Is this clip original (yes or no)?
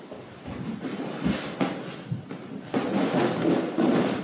yes